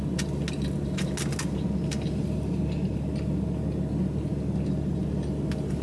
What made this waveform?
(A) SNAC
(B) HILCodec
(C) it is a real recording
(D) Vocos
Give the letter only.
C